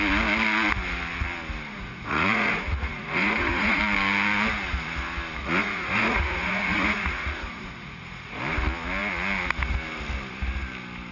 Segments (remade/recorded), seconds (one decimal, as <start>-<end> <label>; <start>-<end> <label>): 0.0-1.7 recorded; 1.7-3.8 remade; 3.8-5.4 recorded; 5.4-8.4 remade; 8.4-11.1 recorded